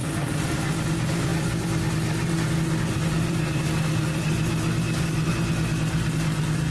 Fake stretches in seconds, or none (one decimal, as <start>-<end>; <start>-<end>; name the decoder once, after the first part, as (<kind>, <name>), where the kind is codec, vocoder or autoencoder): 1.3-5.3 (vocoder, BigVGAN v2)